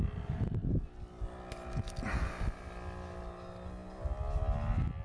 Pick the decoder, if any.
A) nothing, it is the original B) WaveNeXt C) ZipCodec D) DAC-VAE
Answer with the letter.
A